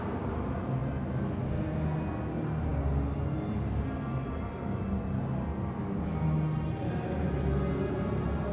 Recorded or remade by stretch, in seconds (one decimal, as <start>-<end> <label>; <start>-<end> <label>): 0.0-8.5 recorded

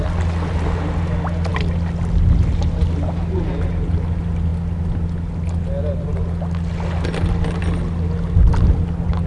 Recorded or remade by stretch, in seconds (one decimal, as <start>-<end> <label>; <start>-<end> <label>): 0.0-9.3 recorded

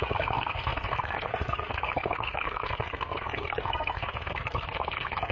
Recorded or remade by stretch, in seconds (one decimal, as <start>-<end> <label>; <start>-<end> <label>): 0.0-5.3 remade

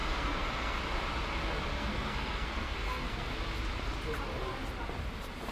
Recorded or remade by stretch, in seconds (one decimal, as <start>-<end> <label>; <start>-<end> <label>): 0.0-0.8 remade; 0.8-1.7 recorded; 1.7-3.3 remade; 3.3-5.5 recorded

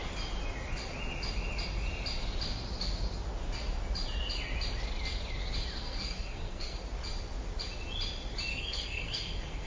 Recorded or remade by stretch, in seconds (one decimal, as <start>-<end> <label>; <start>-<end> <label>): 0.0-5.8 recorded; 5.8-6.8 remade; 6.8-8.5 recorded; 8.5-9.7 remade

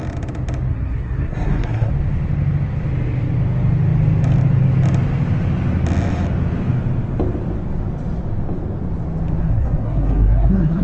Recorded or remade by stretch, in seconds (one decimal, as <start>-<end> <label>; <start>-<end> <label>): 0.0-0.7 recorded; 0.7-1.9 remade; 1.9-9.4 recorded; 9.4-10.8 remade

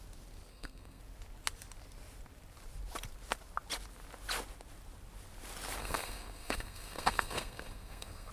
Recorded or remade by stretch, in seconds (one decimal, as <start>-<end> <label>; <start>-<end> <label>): 0.0-0.5 recorded; 0.5-1.0 remade; 1.0-5.8 recorded; 5.8-8.3 remade

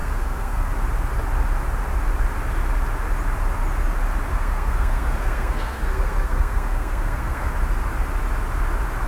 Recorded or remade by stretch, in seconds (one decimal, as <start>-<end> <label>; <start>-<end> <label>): 0.0-0.7 remade; 0.7-4.3 recorded; 4.3-7.5 remade; 7.5-9.1 recorded